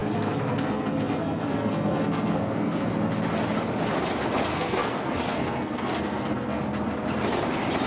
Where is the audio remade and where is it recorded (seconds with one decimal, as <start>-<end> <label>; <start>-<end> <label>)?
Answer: 0.0-2.9 remade; 2.9-4.5 recorded; 4.5-6.6 remade; 6.6-7.9 recorded